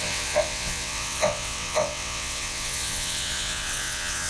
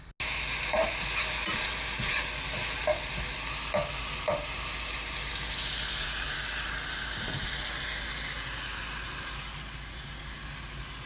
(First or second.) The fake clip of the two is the first